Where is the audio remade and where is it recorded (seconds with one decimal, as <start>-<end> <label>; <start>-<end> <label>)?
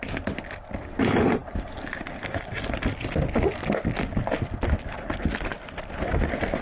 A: 0.0-6.6 recorded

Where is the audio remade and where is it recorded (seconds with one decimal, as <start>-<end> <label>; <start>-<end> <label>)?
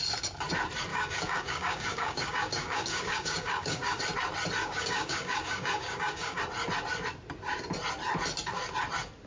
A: 0.0-0.9 recorded; 0.9-4.0 remade; 4.0-4.6 recorded; 4.6-6.4 remade; 6.4-9.3 recorded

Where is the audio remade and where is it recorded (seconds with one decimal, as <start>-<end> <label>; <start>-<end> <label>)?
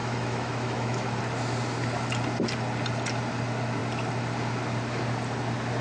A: 0.0-1.2 remade; 1.2-5.8 recorded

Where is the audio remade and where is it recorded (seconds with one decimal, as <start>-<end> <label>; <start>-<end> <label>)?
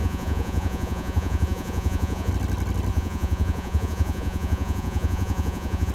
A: 0.0-2.3 remade; 2.3-2.9 recorded; 2.9-5.9 remade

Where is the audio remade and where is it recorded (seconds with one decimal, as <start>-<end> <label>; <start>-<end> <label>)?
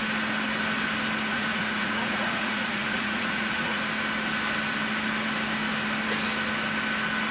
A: 0.0-1.3 recorded; 1.3-3.8 remade; 3.8-7.3 recorded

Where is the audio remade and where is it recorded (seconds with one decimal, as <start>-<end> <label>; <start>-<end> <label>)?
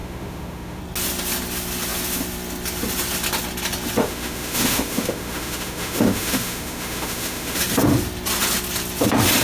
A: 0.0-0.8 remade; 0.8-4.0 recorded; 4.0-7.6 remade; 7.6-9.4 recorded